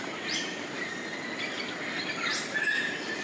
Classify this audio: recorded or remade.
recorded